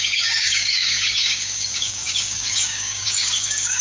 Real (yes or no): no